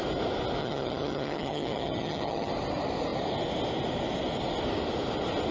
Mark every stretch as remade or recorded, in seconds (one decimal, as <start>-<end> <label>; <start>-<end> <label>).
0.0-0.6 recorded; 0.6-2.5 remade; 2.5-5.5 recorded